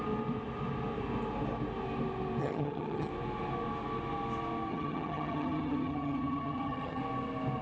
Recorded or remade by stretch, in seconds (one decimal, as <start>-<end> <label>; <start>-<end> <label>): 0.0-2.4 recorded; 2.4-3.1 remade; 3.1-4.7 recorded; 4.7-7.0 remade; 7.0-7.6 recorded

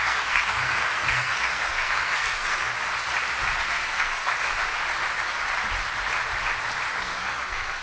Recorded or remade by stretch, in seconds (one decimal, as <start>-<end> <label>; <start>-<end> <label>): 0.0-2.7 remade; 2.7-3.6 recorded; 3.6-4.3 remade; 4.3-7.0 recorded; 7.0-7.8 remade

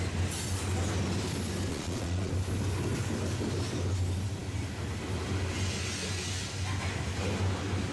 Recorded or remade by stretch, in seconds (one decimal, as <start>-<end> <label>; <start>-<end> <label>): 0.0-1.7 recorded; 1.7-2.3 remade; 2.3-7.9 recorded

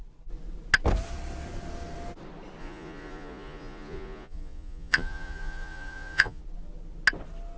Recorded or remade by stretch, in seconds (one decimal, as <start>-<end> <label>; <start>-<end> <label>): 0.0-2.6 recorded; 2.6-6.4 remade; 6.4-7.6 recorded